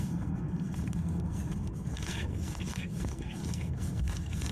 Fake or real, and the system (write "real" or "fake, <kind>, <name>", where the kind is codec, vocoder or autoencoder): fake, codec, SNAC